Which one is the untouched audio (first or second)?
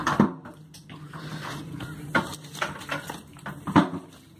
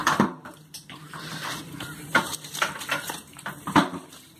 first